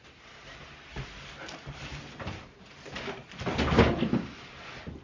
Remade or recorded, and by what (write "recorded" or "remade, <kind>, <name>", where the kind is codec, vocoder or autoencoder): recorded